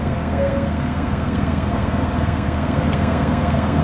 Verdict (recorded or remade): remade